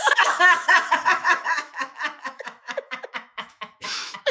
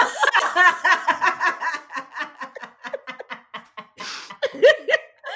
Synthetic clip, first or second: first